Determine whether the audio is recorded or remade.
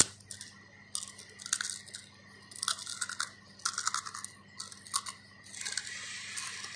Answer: recorded